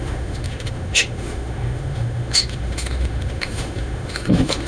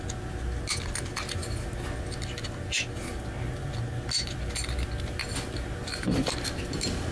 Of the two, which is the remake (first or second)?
first